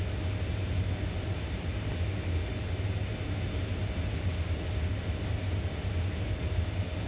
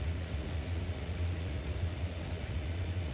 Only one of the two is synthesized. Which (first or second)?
second